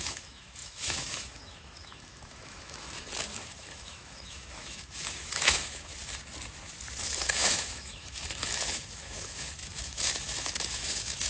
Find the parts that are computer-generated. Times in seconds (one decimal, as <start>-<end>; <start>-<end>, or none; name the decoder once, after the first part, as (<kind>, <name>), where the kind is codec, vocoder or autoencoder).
0.0-5.9 (autoencoder, DAC-VAE); 7.0-11.3